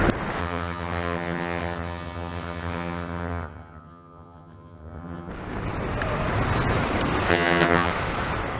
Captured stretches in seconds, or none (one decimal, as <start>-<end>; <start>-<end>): 0.0-0.4; 5.3-7.3; 7.9-8.6